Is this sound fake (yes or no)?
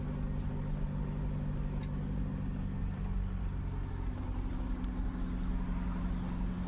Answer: no